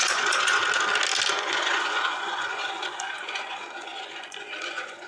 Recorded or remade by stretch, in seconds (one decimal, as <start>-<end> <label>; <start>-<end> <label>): 0.0-0.6 remade; 0.6-1.3 recorded; 1.3-5.1 remade